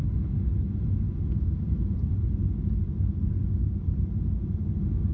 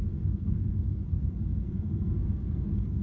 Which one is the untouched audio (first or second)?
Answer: first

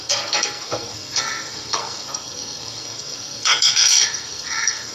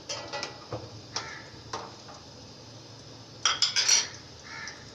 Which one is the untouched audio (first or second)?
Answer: second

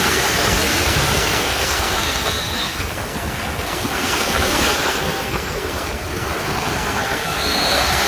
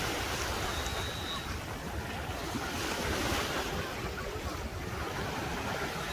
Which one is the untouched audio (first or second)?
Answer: second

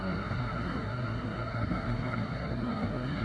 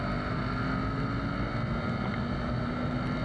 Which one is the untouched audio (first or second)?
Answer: second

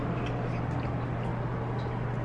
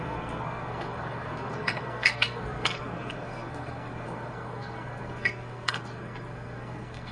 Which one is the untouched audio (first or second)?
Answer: first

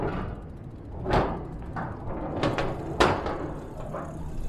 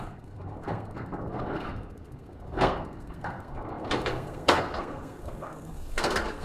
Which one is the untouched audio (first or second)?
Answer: first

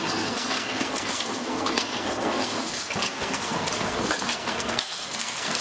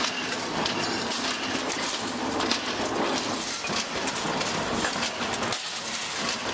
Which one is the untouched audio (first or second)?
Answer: second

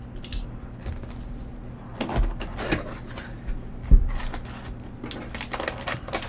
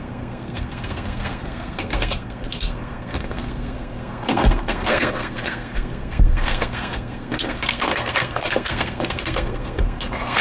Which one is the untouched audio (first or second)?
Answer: first